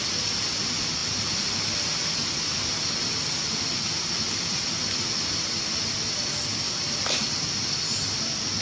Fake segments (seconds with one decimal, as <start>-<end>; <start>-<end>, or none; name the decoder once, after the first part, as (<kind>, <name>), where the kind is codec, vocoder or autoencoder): none